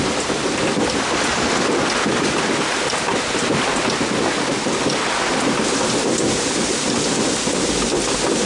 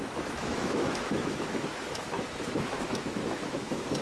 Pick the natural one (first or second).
first